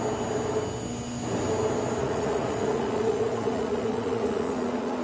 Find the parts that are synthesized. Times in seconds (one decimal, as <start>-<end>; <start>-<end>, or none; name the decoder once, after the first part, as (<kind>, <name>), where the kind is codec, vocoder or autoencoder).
2.0-5.0 (vocoder, Vocos)